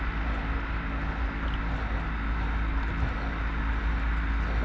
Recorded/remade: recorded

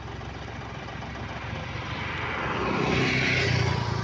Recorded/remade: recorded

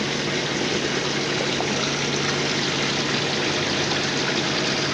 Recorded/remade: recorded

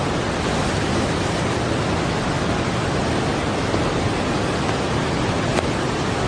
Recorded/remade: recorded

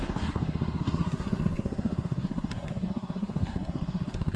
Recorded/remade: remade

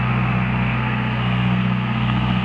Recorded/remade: remade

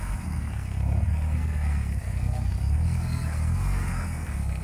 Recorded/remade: remade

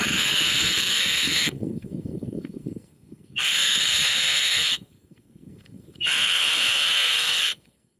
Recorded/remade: remade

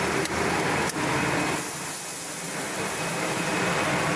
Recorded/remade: recorded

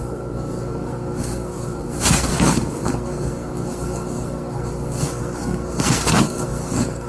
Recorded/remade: remade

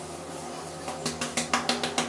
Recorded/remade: recorded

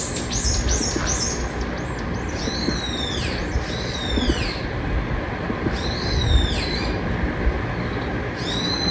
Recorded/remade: recorded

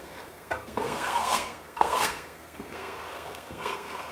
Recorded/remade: remade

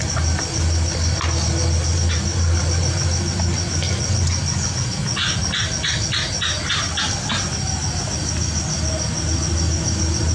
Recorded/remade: recorded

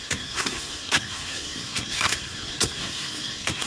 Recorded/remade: remade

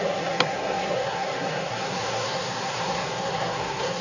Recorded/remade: remade